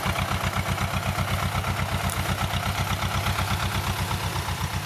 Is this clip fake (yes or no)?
no